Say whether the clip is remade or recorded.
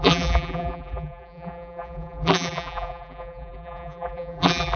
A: remade